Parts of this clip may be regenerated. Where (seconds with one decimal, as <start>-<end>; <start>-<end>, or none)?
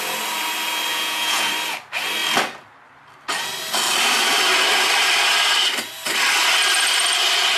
0.9-1.5